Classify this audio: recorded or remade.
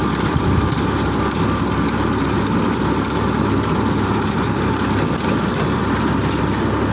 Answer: recorded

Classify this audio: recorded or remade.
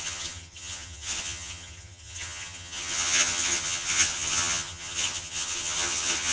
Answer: remade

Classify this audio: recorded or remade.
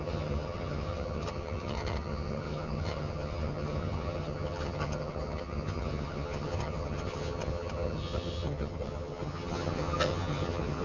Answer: remade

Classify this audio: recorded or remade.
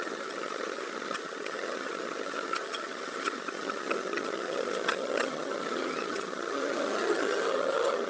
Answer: remade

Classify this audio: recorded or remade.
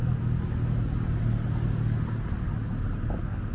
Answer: recorded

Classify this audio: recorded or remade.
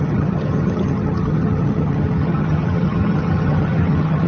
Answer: remade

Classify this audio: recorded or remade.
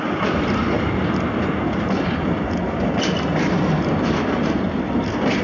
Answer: recorded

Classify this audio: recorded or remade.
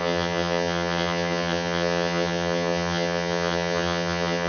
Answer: remade